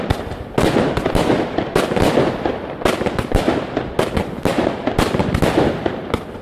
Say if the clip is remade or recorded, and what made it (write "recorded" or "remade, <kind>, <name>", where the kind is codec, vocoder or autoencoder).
recorded